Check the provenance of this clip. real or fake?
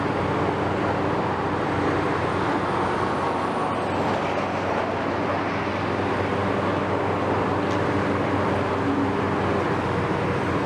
real